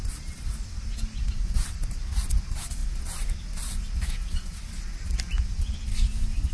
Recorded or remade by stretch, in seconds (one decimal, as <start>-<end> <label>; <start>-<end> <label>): 0.0-6.5 recorded